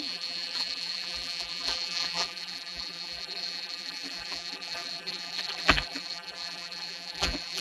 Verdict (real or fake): fake